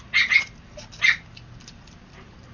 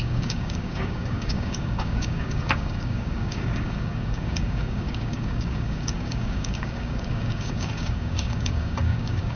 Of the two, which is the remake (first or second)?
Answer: second